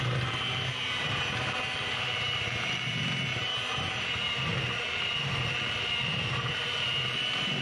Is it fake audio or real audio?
fake